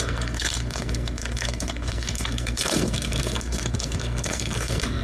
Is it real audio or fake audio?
fake